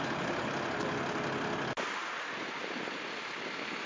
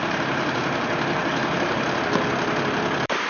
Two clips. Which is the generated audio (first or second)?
second